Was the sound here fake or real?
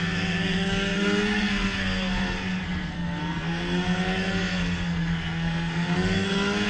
fake